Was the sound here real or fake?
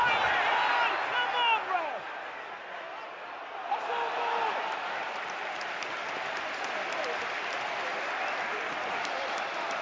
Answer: real